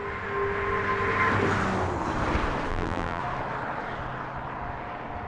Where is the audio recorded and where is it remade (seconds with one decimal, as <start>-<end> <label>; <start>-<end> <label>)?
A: 0.0-2.7 recorded; 2.7-3.2 remade; 3.2-5.3 recorded